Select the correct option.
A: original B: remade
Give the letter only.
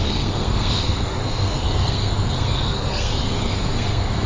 B